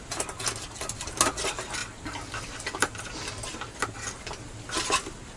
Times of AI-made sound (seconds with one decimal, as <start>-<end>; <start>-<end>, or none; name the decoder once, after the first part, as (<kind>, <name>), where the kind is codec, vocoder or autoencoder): 1.8-3.0 (vocoder, BigVGAN v2)